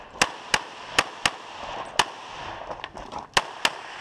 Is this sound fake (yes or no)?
no